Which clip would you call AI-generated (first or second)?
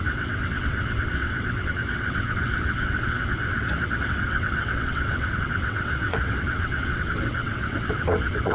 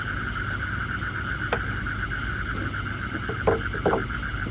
first